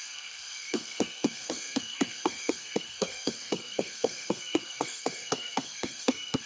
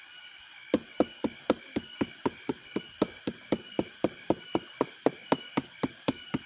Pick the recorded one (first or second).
second